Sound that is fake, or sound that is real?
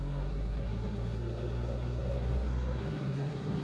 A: fake